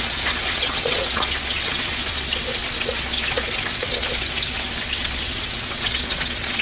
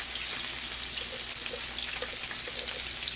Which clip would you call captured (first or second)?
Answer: second